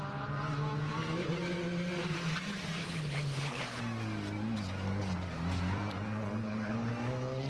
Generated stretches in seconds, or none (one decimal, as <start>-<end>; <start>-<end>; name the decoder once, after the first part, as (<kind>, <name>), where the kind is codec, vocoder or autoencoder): 2.8-3.8 (codec, HILCodec); 6.4-6.9